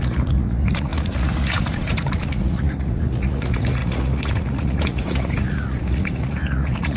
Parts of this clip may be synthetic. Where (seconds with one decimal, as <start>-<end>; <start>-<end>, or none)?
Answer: 0.0-7.0